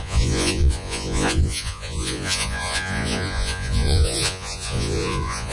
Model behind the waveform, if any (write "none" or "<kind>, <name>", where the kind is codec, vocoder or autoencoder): vocoder, Vocos